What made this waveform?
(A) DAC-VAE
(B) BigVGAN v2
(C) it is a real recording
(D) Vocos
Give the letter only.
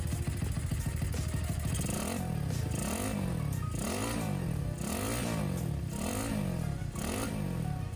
C